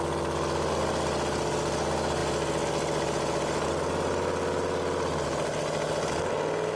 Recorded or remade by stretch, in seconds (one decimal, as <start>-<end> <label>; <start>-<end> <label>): 0.0-6.8 recorded